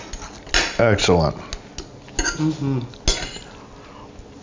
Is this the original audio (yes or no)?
yes